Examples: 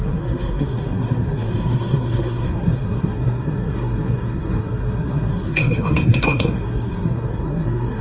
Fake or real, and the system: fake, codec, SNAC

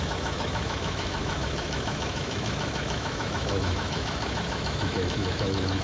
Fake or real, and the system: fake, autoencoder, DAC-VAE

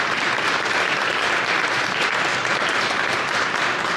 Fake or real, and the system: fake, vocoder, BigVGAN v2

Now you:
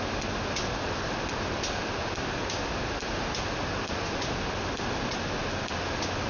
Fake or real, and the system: real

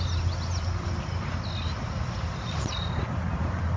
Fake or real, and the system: real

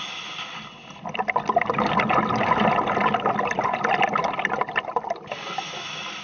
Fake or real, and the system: real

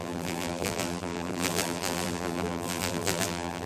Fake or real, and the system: fake, vocoder, BigVGAN v2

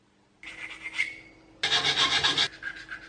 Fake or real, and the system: real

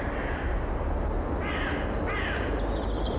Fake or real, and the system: real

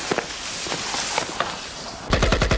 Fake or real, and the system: real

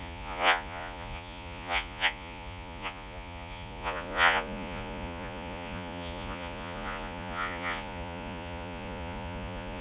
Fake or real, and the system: fake, vocoder, Vocos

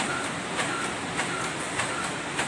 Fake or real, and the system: real